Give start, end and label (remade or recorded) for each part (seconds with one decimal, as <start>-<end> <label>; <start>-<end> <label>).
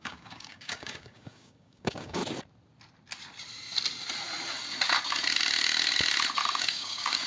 0.0-2.2 remade; 2.2-6.6 recorded; 6.6-7.3 remade